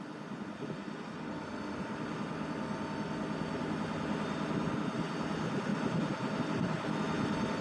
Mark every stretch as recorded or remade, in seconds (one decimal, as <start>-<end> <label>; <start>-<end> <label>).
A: 0.0-7.6 recorded